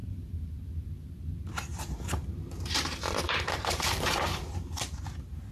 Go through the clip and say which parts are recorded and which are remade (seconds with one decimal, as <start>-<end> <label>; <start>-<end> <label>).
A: 0.0-0.6 remade; 0.6-1.7 recorded; 1.7-5.0 remade; 5.0-5.5 recorded